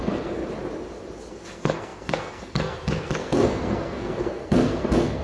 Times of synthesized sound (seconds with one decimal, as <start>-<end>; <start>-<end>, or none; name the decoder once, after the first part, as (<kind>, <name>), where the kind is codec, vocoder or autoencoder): 0.0-0.4 (codec, SNAC); 1.3-5.2